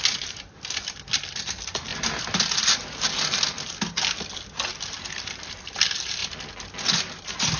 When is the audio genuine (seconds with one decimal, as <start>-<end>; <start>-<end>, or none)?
0.0-7.6